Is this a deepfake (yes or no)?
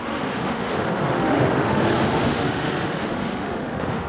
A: yes